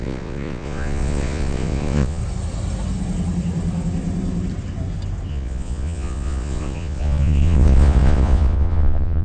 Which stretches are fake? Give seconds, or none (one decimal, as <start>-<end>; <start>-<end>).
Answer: 0.0-2.2; 5.3-9.2